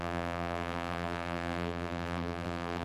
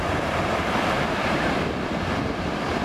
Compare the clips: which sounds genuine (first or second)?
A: second